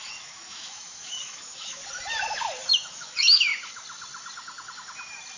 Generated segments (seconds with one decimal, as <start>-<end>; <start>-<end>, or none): 0.0-1.8; 2.7-3.5